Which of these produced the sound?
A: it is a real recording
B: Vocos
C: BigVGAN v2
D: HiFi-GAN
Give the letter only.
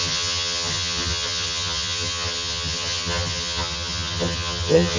D